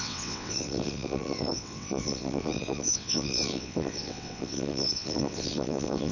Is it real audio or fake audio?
fake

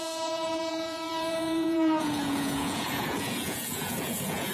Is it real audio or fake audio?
fake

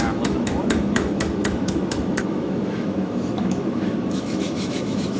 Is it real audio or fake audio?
fake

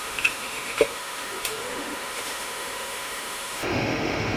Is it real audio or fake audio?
fake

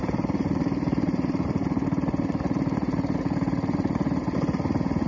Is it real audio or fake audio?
fake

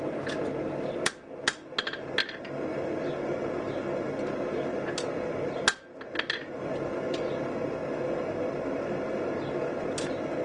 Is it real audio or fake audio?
real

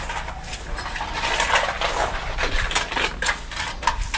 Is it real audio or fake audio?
real